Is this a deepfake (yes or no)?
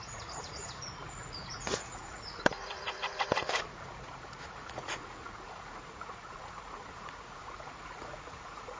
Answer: yes